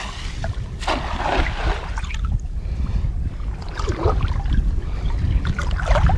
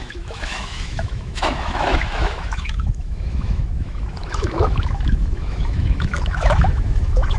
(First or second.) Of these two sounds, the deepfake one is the second